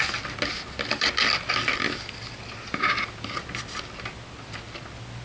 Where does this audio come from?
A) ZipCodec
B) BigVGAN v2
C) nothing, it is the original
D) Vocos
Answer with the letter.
C